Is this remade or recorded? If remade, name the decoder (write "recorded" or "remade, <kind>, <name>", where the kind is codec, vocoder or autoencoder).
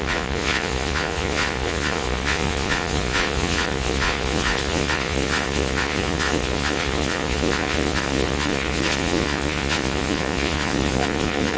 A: remade, vocoder, Vocos